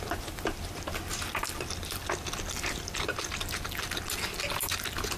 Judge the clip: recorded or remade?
recorded